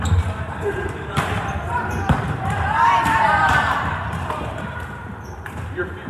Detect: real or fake fake